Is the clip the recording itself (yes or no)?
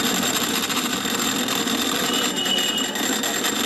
yes